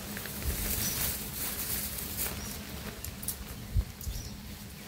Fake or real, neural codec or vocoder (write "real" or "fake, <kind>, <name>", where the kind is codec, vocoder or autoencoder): real